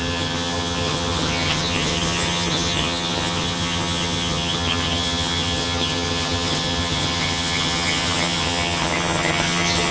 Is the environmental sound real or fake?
fake